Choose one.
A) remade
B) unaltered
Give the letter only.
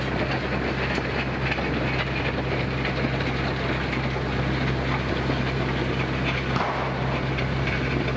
B